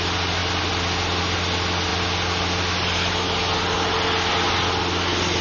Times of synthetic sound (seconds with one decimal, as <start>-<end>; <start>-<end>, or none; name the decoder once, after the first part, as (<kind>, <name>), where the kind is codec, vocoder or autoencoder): none

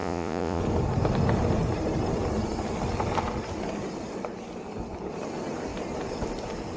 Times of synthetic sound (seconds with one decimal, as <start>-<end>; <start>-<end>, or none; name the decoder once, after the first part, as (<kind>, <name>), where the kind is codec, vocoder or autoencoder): 0.0-0.6 (vocoder, Vocos)

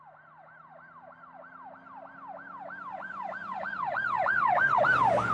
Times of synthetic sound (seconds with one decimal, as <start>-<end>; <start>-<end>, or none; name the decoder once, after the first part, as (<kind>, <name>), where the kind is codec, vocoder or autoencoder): 2.9-4.8 (vocoder, Vocos)

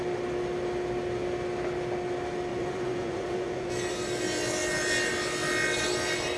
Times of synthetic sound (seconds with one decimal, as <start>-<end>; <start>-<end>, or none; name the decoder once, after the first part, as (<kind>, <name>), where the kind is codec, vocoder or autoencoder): 2.5-3.7 (vocoder, Vocos)

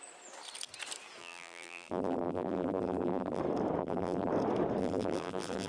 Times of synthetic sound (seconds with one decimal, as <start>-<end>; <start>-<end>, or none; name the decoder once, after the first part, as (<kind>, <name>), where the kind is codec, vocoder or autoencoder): 1.2-3.4 (vocoder, BigVGAN v2); 3.8-4.3; 4.8-5.7

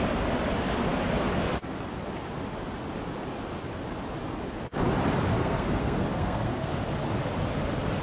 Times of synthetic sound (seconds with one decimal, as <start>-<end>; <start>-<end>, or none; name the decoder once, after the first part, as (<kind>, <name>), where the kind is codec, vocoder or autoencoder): 5.4-6.7 (codec, SNAC)